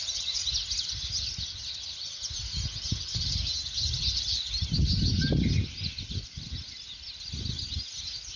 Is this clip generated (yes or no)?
no